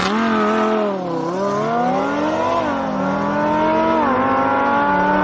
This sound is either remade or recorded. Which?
recorded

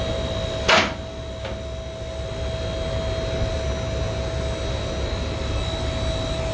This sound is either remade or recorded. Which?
recorded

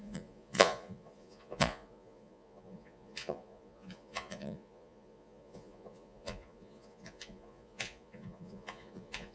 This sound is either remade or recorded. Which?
remade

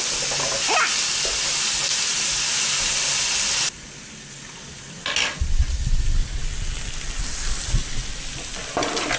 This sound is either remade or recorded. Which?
recorded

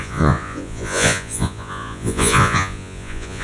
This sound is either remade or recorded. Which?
remade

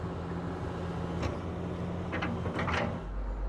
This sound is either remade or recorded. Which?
recorded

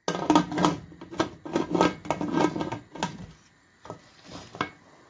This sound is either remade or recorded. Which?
recorded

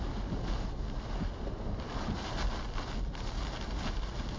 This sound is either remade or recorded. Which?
recorded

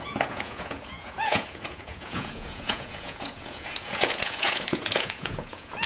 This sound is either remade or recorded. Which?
remade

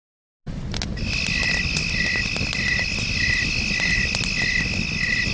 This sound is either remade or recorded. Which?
recorded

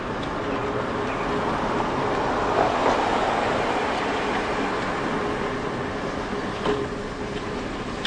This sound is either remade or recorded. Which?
recorded